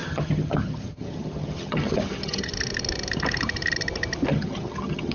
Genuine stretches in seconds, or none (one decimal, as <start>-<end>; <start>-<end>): 2.5-4.3